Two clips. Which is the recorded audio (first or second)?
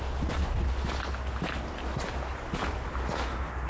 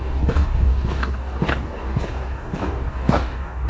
first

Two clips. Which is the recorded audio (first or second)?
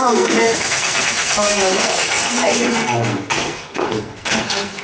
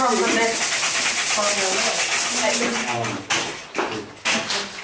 second